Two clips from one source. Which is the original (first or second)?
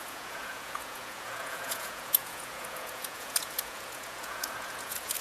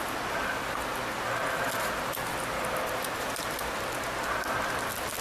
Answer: second